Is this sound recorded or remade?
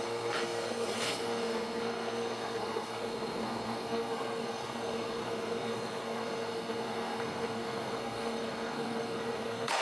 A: remade